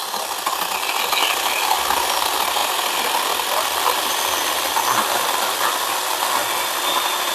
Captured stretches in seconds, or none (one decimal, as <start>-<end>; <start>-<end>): 0.0-7.3